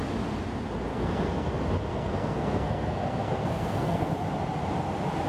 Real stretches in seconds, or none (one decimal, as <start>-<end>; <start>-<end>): 0.0-0.9; 1.5-1.9; 4.1-5.3